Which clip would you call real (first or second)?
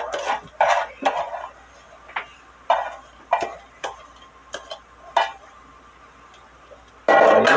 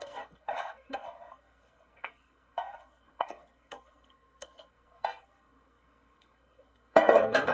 first